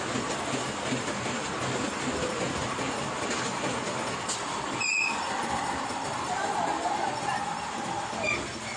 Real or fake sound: real